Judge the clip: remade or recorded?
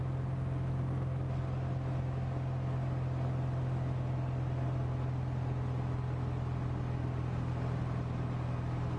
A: recorded